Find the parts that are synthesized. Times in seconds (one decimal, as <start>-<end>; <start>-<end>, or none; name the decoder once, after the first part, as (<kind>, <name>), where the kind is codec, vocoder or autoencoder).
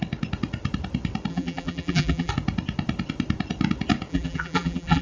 1.3-2.3 (vocoder, BigVGAN v2); 4.1-5.0